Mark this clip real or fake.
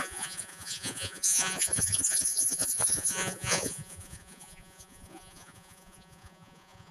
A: fake